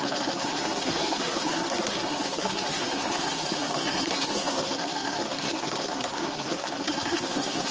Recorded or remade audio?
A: remade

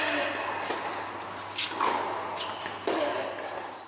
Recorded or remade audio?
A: recorded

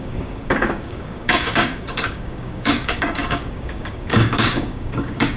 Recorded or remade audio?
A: remade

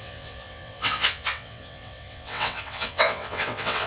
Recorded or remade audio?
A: remade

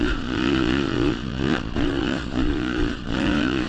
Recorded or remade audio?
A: remade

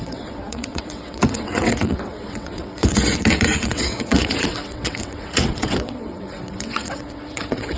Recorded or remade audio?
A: remade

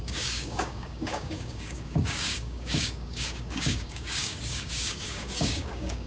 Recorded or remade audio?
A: remade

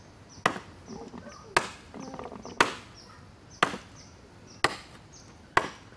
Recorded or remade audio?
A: recorded